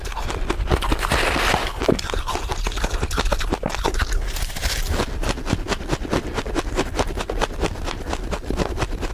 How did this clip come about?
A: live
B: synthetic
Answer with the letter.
A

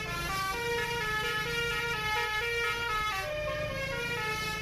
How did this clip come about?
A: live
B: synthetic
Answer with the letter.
A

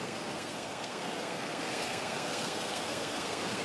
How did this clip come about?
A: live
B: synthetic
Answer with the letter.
B